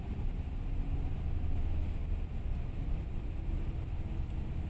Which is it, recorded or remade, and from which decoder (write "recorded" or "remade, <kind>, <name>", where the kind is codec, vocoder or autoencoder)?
recorded